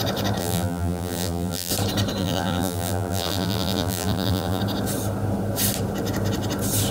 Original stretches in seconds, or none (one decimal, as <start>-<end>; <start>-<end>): 0.0-0.4; 1.7-2.2; 4.6-6.9